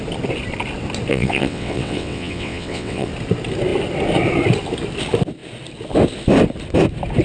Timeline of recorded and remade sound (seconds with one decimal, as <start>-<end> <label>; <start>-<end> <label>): 0.0-1.1 recorded; 1.1-3.1 remade; 3.1-7.2 recorded